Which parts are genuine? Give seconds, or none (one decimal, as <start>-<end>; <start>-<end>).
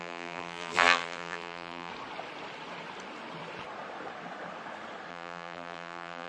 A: 1.9-5.1